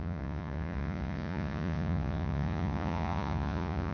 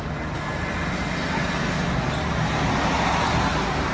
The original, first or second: second